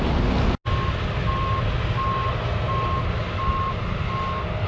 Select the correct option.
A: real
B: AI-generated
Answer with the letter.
A